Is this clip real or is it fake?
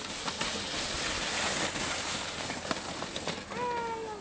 real